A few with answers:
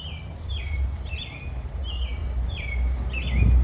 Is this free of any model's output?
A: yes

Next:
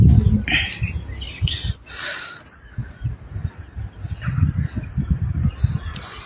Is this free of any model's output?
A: yes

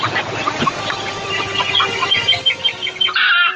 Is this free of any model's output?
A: yes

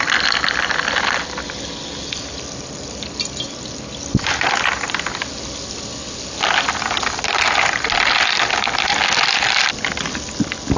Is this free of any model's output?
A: yes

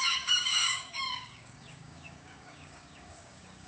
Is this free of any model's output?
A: no